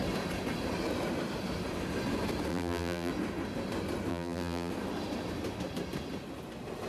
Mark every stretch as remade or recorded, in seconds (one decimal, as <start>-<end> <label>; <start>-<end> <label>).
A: 0.0-2.5 recorded; 2.5-3.1 remade; 3.1-4.1 recorded; 4.1-4.7 remade; 4.7-6.9 recorded

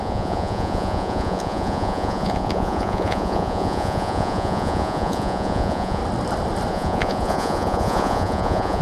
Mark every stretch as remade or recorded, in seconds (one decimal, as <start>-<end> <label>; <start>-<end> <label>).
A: 0.0-6.0 remade; 6.0-6.7 recorded; 6.7-8.8 remade

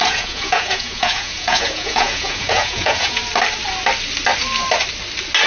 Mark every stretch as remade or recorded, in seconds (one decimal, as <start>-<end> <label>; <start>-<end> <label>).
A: 0.0-3.2 remade; 3.2-5.5 recorded

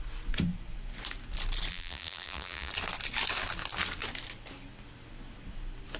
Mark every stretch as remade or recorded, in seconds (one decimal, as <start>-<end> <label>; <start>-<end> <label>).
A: 0.0-1.7 recorded; 1.7-2.7 remade; 2.7-6.0 recorded